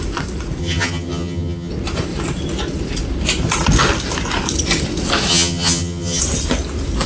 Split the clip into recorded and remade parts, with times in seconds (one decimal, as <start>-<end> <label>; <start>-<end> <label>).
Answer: 0.0-0.6 recorded; 0.6-1.7 remade; 1.7-5.3 recorded; 5.3-6.2 remade; 6.2-7.1 recorded